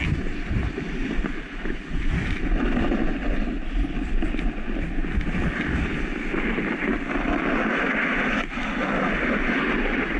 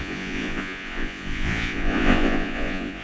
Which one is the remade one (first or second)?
second